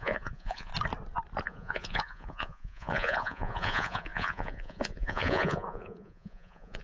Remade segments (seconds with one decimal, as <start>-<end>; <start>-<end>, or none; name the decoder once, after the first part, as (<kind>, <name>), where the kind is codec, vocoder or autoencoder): 0.0-0.7 (vocoder, Vocos); 1.4-6.8